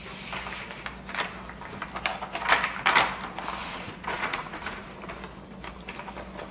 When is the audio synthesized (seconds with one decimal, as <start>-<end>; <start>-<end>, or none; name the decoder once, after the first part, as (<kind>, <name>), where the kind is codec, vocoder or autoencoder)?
3.6-4.9 (vocoder, Vocos)